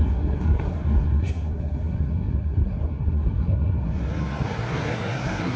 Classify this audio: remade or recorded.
remade